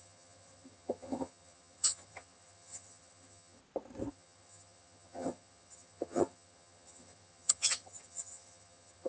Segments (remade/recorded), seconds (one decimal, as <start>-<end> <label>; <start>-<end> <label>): 0.0-3.6 remade; 3.6-4.1 recorded; 4.1-9.1 remade

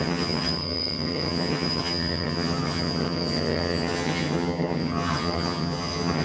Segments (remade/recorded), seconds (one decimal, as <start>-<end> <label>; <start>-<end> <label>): 0.0-6.2 remade